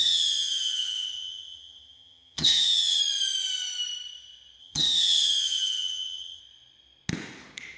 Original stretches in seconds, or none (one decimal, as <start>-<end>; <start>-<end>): 3.0-4.6; 6.4-7.8